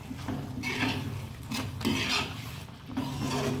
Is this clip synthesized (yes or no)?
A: no